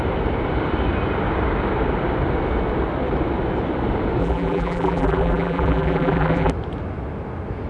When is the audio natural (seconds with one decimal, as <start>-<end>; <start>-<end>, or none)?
0.0-4.2; 6.5-7.7